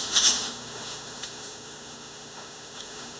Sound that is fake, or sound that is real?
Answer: fake